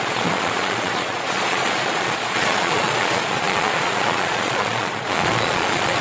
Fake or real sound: fake